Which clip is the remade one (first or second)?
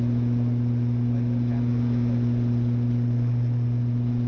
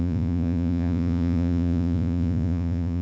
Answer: second